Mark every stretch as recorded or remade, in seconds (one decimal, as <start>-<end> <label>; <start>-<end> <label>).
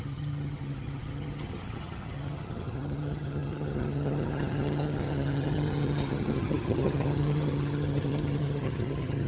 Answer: 0.0-9.3 remade